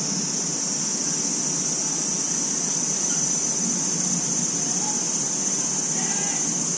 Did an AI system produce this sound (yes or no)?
no